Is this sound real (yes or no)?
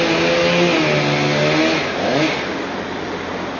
yes